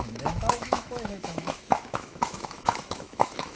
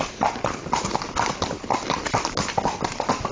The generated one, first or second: first